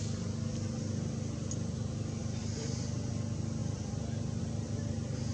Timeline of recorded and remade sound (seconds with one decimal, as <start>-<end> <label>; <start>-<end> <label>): 0.0-2.2 recorded; 2.2-3.1 remade; 3.1-3.6 recorded; 3.6-4.4 remade; 4.4-5.3 recorded